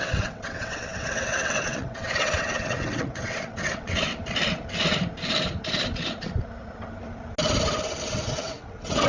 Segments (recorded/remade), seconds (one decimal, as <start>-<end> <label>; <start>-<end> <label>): 0.0-4.1 remade; 4.1-8.3 recorded; 8.3-9.1 remade